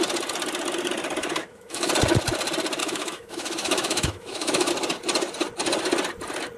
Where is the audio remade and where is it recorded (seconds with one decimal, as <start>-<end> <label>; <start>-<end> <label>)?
0.0-1.4 recorded; 1.4-1.9 remade; 1.9-2.8 recorded; 2.8-4.7 remade; 4.7-6.6 recorded